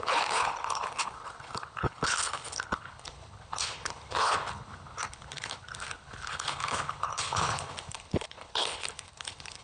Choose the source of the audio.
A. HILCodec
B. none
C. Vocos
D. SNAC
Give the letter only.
A